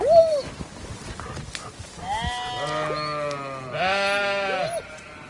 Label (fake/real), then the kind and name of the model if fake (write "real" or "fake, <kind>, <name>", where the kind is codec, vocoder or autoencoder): real